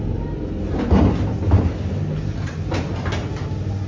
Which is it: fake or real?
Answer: real